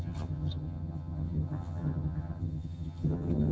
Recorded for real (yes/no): no